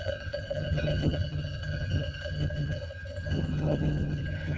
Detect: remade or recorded remade